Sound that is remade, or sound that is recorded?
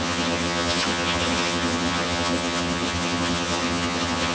remade